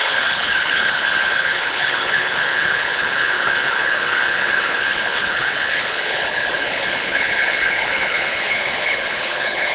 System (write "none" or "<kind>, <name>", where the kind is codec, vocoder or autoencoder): codec, HILCodec